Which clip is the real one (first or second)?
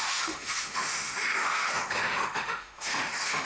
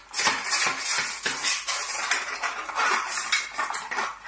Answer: second